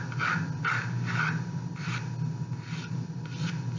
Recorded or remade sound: recorded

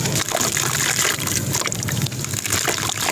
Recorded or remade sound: recorded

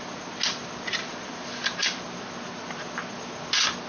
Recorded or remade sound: recorded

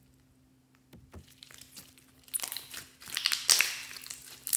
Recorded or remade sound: recorded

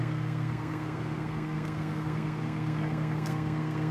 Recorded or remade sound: remade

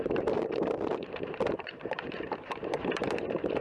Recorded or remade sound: remade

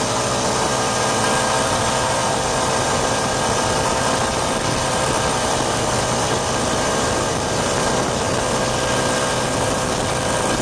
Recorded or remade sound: recorded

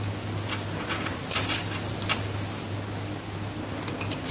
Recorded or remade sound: recorded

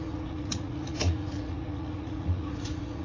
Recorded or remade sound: remade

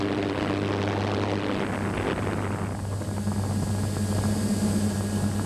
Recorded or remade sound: recorded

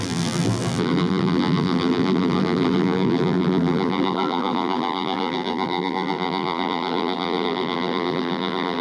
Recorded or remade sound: remade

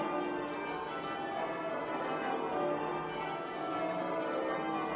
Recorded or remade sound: recorded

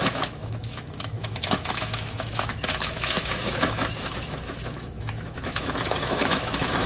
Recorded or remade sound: remade